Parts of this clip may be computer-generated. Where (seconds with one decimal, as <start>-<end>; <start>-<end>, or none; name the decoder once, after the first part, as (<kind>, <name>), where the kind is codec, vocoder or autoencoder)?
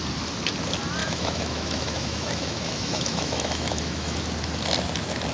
1.0-4.2 (autoencoder, DAC-VAE)